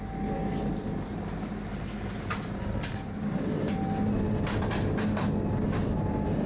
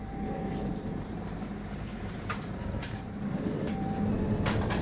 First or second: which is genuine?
first